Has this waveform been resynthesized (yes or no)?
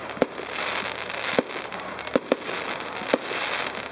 no